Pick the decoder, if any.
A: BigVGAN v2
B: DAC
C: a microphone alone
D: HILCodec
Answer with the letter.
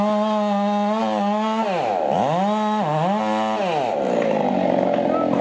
C